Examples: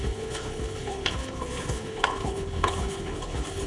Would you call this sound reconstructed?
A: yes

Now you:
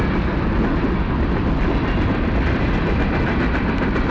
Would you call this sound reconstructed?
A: no